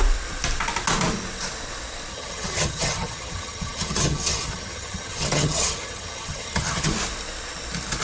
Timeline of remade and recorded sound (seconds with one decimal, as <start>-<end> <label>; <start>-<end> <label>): 0.0-2.1 recorded; 2.1-6.9 remade; 6.9-8.0 recorded